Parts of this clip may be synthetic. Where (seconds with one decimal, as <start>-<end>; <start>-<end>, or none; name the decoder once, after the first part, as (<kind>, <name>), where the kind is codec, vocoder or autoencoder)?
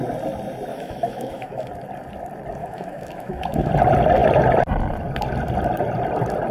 0.7-1.7 (autoencoder, DAC-VAE); 2.6-3.7